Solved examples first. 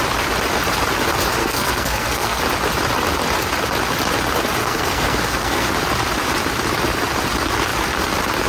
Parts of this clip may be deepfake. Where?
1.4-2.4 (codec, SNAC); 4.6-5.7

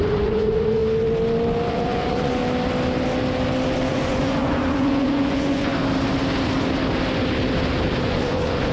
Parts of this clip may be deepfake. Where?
0.0-0.8 (vocoder, Vocos); 1.7-2.4; 3.9-5.7; 8.0-8.7

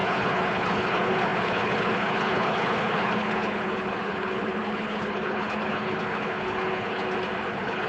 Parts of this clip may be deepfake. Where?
0.0-7.0 (codec, HILCodec); 7.5-7.9

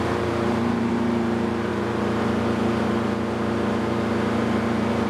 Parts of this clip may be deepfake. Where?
0.0-1.7 (vocoder, BigVGAN v2)

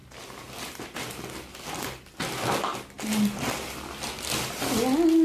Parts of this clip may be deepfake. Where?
0.0-1.6 (vocoder, BigVGAN v2)

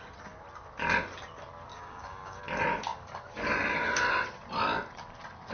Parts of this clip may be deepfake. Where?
1.7-2.4 (codec, DAC)

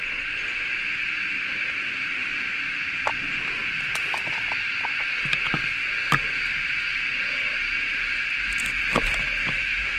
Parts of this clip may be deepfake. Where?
9.4-10.0 (autoencoder, DAC-VAE)